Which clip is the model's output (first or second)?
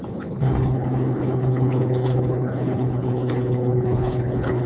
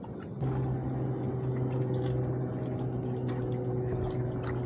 first